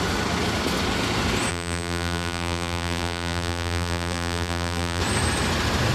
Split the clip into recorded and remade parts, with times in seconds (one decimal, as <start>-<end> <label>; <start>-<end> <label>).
0.0-1.5 recorded; 1.5-5.0 remade; 5.0-5.9 recorded